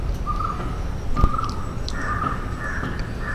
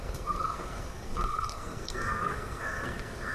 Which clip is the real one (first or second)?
first